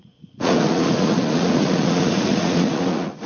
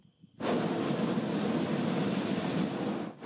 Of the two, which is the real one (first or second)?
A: second